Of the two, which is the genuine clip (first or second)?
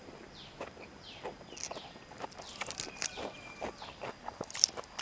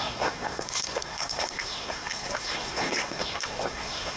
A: first